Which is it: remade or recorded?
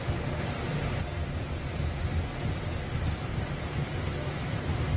recorded